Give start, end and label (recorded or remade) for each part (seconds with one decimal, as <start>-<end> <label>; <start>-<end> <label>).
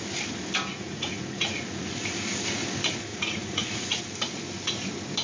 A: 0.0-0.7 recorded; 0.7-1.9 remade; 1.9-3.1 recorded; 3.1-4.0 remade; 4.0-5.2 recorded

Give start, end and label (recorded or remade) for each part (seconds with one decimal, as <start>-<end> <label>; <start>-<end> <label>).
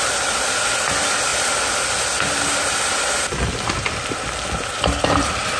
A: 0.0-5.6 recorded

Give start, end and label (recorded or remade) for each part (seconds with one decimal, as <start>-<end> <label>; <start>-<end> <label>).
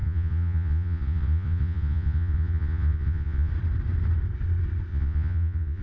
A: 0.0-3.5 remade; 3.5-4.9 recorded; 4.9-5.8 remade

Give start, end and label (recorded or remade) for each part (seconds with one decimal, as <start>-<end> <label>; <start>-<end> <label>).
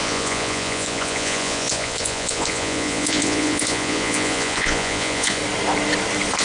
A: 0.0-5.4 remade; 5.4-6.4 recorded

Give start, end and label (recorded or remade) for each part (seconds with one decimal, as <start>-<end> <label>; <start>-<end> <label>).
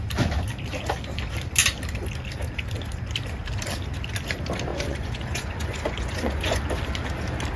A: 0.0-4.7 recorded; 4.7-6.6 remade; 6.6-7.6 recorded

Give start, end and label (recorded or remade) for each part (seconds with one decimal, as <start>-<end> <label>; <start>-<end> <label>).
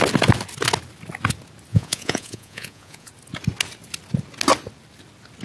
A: 0.0-1.7 recorded; 1.7-3.1 remade; 3.1-5.4 recorded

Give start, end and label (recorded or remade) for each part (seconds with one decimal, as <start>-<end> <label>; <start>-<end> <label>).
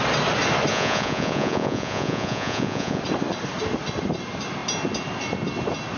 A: 0.0-0.7 recorded; 0.7-3.0 remade; 3.0-6.0 recorded